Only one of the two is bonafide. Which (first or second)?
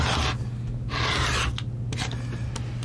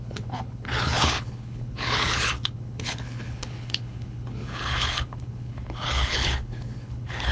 first